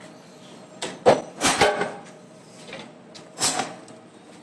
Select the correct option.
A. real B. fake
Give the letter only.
A